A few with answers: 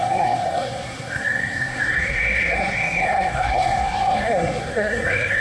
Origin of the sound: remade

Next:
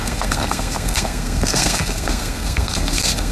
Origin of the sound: remade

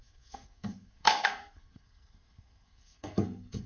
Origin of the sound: remade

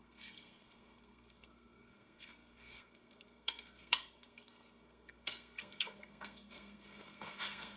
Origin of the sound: remade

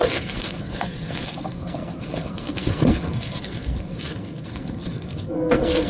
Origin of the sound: remade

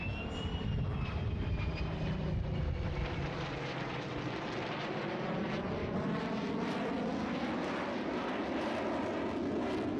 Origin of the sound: recorded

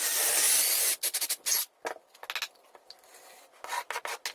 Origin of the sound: recorded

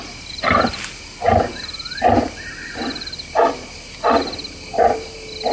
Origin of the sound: recorded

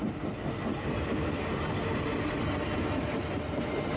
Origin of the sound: recorded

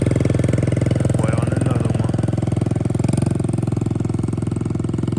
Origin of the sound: recorded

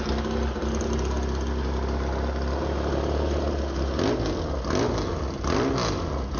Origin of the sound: recorded